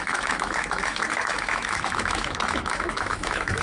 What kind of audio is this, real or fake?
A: fake